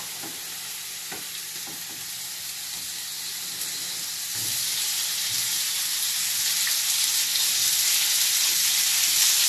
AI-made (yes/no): no